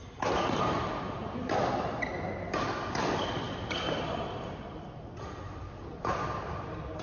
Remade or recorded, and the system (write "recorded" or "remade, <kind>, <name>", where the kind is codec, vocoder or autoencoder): recorded